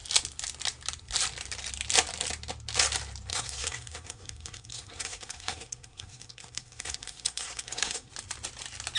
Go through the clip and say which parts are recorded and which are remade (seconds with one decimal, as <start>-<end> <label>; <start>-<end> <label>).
0.0-3.3 recorded; 3.3-8.1 remade; 8.1-9.0 recorded